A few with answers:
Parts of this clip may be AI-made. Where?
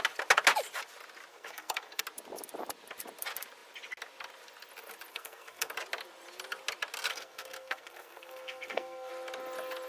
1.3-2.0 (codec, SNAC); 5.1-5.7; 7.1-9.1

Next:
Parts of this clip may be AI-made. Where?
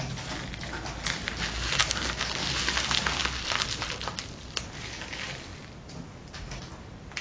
none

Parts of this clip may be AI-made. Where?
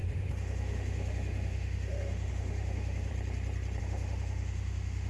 0.0-3.1 (autoencoder, DAC-VAE); 3.8-5.1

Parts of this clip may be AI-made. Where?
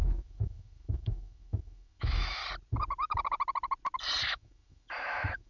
0.0-2.4 (autoencoder, DAC-VAE); 4.3-5.5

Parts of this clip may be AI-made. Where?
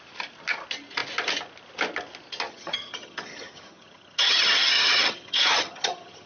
2.5-6.3 (vocoder, HiFi-GAN)